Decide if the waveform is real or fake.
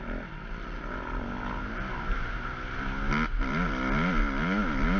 real